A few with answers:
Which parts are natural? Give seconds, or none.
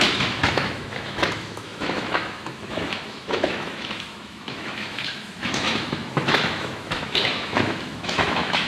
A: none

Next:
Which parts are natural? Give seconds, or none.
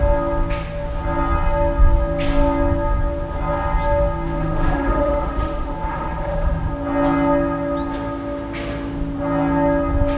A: 0.0-4.4; 6.7-10.2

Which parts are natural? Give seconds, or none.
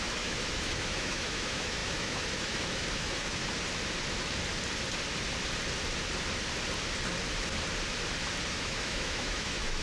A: 3.4-8.5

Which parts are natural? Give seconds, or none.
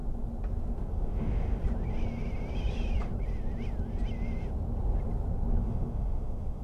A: 0.0-0.9; 1.6-5.6